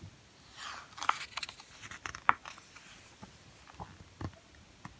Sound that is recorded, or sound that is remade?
recorded